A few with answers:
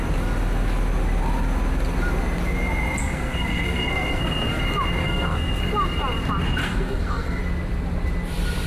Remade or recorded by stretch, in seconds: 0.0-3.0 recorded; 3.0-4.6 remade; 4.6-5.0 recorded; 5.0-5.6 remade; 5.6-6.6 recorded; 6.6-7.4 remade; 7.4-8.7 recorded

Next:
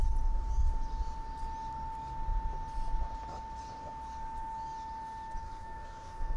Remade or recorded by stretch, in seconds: 0.0-5.4 recorded; 5.4-6.4 remade

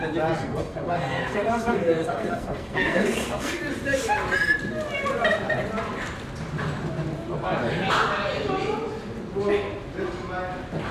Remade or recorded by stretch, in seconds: 0.0-0.4 recorded; 0.4-3.6 remade; 3.6-10.9 recorded

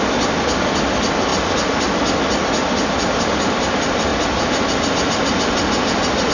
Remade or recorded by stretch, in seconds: 0.0-6.3 recorded

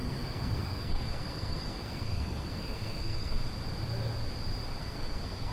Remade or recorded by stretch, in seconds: 0.0-3.4 remade; 3.4-4.8 recorded; 4.8-5.5 remade

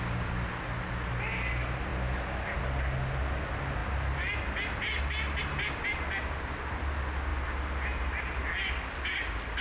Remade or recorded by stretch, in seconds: 0.0-9.6 recorded

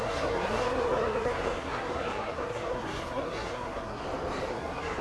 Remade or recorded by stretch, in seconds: 0.0-4.0 remade; 4.0-4.5 recorded; 4.5-5.0 remade

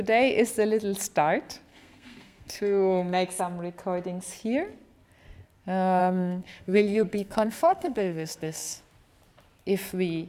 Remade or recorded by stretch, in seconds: 0.0-1.7 recorded; 1.7-3.4 remade; 3.4-6.0 recorded; 6.0-8.8 remade; 8.8-10.3 recorded